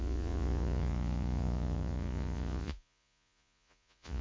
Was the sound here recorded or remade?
remade